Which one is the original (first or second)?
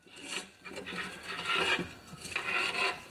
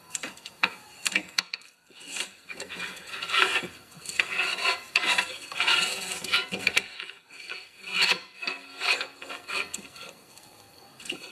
first